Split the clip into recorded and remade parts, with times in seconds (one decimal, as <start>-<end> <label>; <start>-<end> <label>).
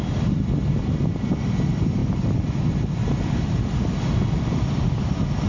0.0-5.5 recorded